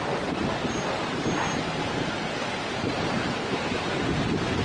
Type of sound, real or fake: real